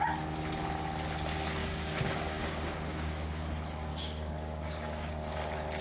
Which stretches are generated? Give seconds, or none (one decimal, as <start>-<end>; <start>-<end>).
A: 1.6-3.4; 3.9-5.1